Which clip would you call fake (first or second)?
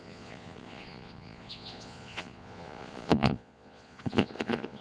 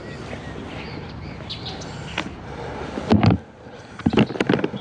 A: first